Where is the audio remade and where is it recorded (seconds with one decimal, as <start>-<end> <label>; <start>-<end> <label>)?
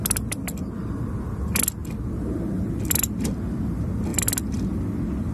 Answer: 0.0-5.3 recorded